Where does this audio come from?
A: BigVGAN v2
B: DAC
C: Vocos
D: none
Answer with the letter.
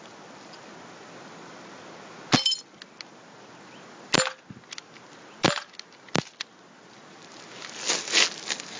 D